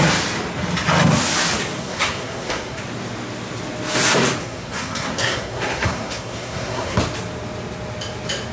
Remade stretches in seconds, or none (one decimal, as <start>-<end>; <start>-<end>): 1.8-2.8; 4.4-7.0